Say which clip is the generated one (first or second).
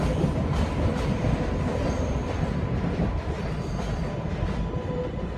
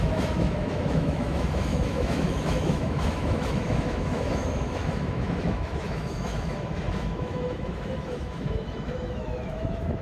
second